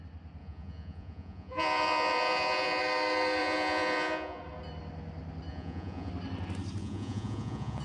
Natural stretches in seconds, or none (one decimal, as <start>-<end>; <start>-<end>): 0.0-0.4; 2.8-3.4; 4.4-5.5; 6.1-6.8